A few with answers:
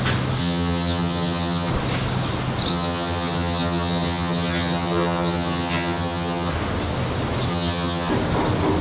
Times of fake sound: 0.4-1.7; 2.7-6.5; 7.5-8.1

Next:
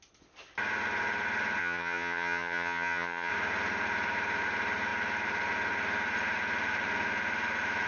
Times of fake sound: 1.6-3.3

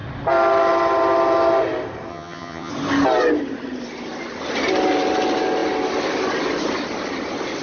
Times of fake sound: 2.1-2.7

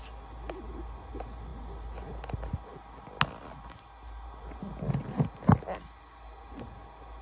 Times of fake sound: none

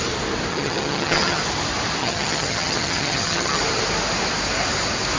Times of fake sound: 0.5-1.4; 2.0-3.6

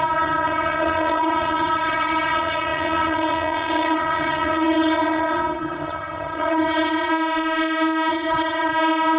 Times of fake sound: 0.0-7.1; 8.1-8.7

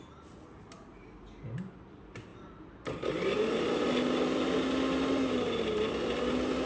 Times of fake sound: none

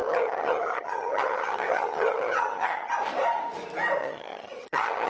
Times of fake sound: 0.0-2.9; 4.0-5.1